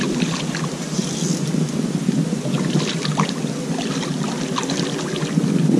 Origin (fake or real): real